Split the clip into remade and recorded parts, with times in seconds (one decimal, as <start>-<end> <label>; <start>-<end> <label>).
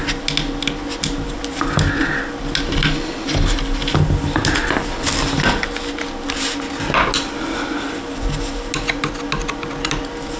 0.0-10.4 recorded